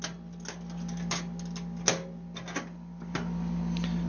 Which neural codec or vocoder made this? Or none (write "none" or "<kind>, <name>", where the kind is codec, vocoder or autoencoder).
none